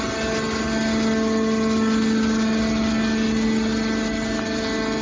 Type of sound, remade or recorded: recorded